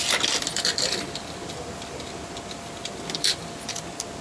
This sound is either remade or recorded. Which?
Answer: recorded